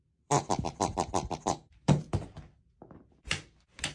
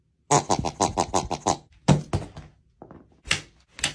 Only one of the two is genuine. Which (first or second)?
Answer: second